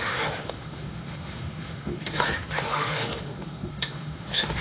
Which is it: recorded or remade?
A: remade